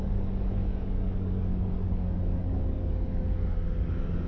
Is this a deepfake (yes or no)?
yes